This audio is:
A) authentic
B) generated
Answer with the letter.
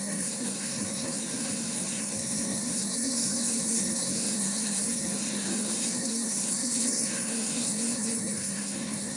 B